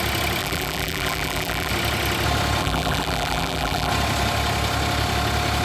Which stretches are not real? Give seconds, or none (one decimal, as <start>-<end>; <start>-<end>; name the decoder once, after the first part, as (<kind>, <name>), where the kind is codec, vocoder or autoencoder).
0.4-1.7 (vocoder, BigVGAN v2); 2.6-3.9